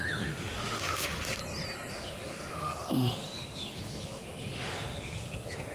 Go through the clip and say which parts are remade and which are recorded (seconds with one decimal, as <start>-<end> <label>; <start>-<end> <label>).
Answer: 0.0-1.4 remade; 1.4-1.9 recorded; 1.9-5.7 remade